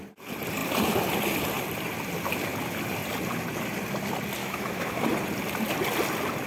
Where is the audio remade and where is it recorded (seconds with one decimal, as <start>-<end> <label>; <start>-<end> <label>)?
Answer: 0.0-4.4 recorded; 4.4-5.1 remade; 5.1-6.5 recorded